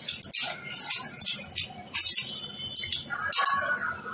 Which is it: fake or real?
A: real